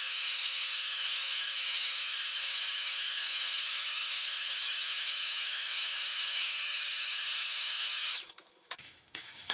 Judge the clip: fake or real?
fake